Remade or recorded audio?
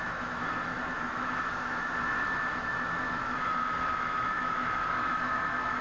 remade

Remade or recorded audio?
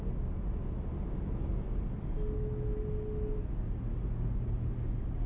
recorded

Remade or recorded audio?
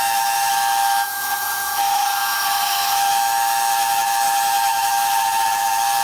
remade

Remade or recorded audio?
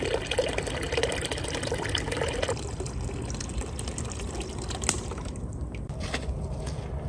recorded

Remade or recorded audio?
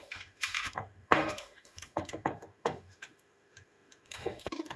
remade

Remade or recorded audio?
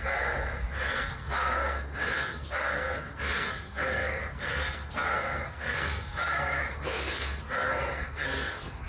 remade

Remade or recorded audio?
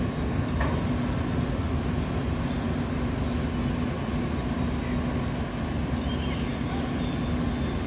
recorded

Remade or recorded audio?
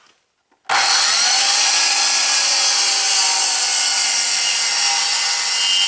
recorded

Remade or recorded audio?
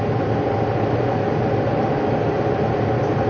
recorded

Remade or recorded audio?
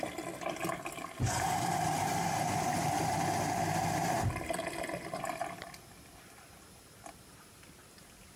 recorded